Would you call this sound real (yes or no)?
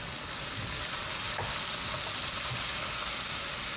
yes